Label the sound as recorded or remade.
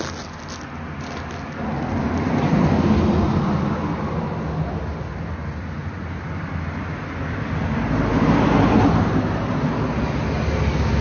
recorded